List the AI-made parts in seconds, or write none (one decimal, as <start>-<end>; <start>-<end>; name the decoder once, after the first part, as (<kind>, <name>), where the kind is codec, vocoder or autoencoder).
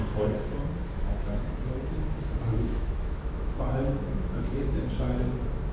0.8-1.5 (autoencoder, DAC-VAE); 2.5-4.8